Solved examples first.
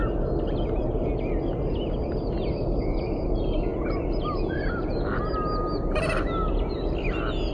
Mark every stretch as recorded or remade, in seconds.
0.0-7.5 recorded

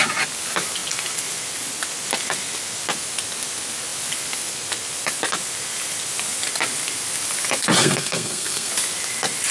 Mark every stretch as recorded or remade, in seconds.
0.0-7.8 recorded; 7.8-8.7 remade; 8.7-9.5 recorded